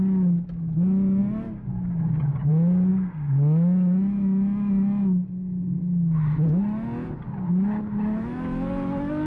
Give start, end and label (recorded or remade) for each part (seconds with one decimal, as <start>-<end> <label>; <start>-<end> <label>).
0.0-9.3 recorded